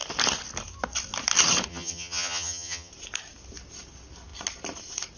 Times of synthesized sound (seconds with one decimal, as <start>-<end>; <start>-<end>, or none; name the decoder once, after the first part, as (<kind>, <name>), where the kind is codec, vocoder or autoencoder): 1.7-2.9 (vocoder, HiFi-GAN)